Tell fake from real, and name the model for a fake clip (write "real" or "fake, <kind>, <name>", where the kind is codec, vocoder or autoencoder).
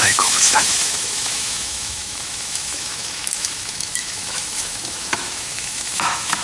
fake, autoencoder, DAC-VAE